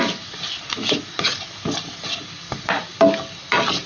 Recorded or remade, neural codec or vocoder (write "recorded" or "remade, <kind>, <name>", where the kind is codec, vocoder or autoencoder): recorded